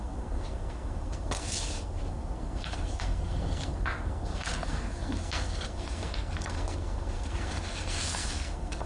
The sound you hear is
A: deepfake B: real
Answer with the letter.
A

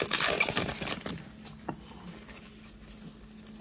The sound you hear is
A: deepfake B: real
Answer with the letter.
B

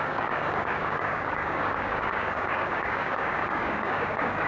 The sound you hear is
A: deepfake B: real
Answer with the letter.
A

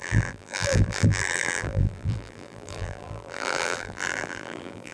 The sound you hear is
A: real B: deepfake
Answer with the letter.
B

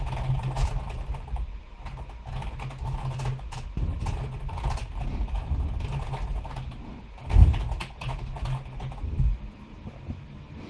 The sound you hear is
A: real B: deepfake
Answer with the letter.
A